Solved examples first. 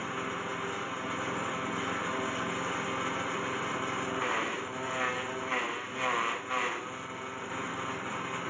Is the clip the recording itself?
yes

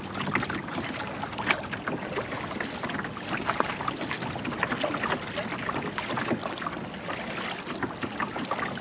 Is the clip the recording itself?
yes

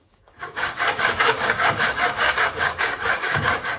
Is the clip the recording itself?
no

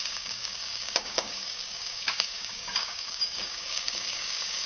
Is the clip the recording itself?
no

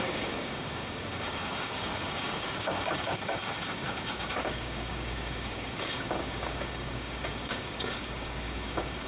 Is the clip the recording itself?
no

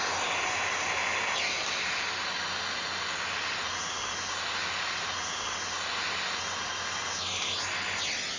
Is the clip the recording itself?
yes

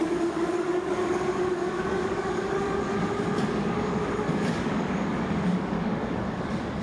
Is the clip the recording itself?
no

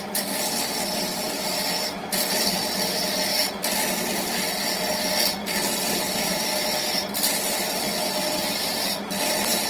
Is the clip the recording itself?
yes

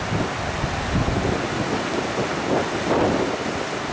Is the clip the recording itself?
yes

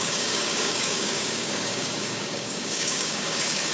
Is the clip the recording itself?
no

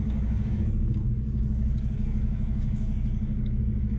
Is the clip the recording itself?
no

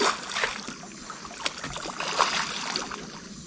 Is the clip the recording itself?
yes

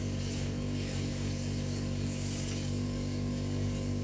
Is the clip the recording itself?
no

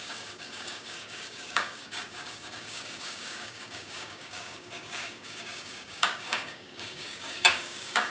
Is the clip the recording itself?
no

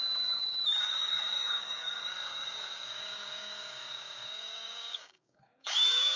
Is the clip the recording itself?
no